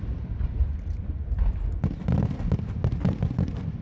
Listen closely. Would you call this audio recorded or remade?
recorded